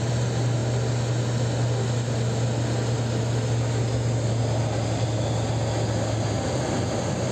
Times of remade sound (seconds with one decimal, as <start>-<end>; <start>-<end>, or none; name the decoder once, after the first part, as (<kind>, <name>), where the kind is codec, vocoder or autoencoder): none